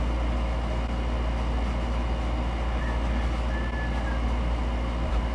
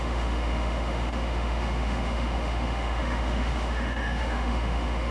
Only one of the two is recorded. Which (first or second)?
first